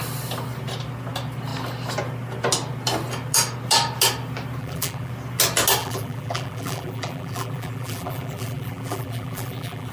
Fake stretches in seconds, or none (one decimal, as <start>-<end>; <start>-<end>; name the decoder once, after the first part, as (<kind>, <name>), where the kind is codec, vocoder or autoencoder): 4.6-5.1 (vocoder, BigVGAN v2); 5.8-9.9